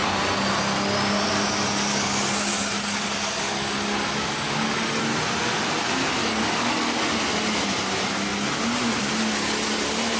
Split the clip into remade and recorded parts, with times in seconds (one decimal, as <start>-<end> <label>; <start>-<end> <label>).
0.0-1.9 recorded; 1.9-5.0 remade; 5.0-6.2 recorded; 6.2-7.0 remade; 7.0-10.2 recorded

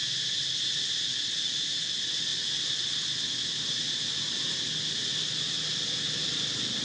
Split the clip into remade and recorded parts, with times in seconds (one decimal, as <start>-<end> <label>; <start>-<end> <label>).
0.0-6.8 recorded

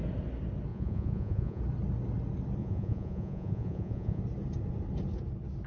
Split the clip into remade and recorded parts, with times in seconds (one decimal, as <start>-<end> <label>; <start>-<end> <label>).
0.0-0.7 recorded; 0.7-1.6 remade; 1.6-2.6 recorded; 2.6-4.2 remade; 4.2-5.7 recorded

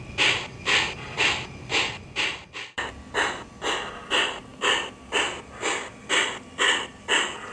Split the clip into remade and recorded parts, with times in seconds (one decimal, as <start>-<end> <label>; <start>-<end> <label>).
0.0-7.5 recorded

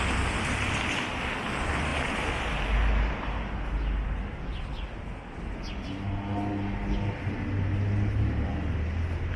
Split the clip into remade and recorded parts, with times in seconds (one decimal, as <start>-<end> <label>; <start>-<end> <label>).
0.0-9.4 recorded

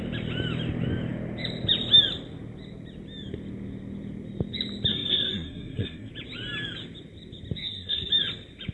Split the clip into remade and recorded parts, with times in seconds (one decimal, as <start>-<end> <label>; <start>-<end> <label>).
0.0-4.9 recorded; 4.9-6.1 remade; 6.1-7.6 recorded; 7.6-8.1 remade; 8.1-8.7 recorded

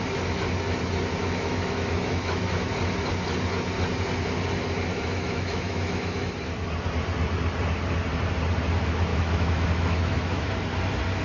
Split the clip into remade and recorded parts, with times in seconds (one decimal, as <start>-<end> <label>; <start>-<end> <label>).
0.0-1.2 recorded; 1.2-2.7 remade; 2.7-4.9 recorded; 4.9-6.3 remade; 6.3-9.1 recorded; 9.1-10.5 remade; 10.5-11.2 recorded

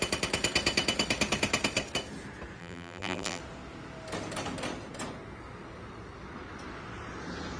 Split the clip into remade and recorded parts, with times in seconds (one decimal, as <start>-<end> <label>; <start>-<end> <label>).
0.0-2.6 recorded; 2.6-3.4 remade; 3.4-7.6 recorded